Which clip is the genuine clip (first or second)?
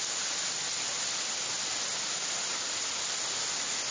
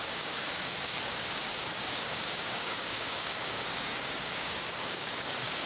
first